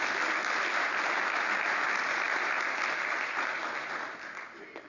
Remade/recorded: recorded